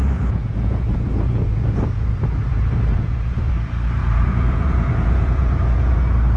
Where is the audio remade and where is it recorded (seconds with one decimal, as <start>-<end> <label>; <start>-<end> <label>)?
0.0-2.1 remade; 2.1-2.5 recorded; 2.5-3.5 remade; 3.5-4.0 recorded; 4.0-6.0 remade; 6.0-6.4 recorded